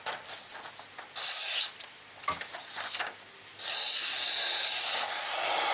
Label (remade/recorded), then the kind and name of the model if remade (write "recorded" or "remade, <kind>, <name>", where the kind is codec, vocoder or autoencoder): recorded